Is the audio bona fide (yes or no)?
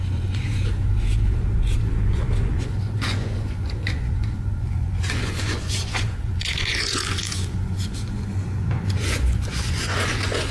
no